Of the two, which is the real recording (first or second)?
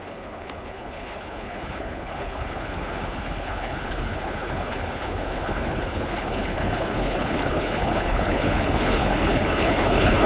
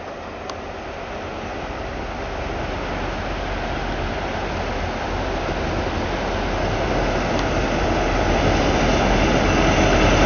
second